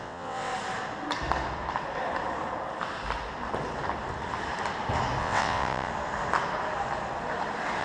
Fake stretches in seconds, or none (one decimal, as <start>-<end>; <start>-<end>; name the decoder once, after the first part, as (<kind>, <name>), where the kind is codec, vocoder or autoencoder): 0.0-0.5 (vocoder, WaveNeXt); 5.2-5.9